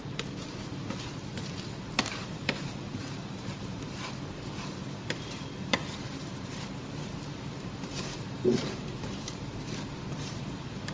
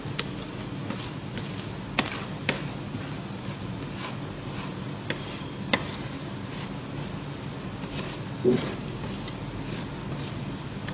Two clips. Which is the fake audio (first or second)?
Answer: first